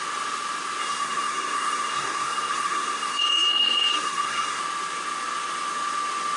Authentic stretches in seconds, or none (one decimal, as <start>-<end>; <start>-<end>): 0.0-0.8; 4.6-6.4